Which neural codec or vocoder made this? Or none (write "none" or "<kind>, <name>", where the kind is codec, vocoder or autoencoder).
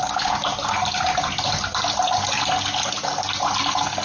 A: none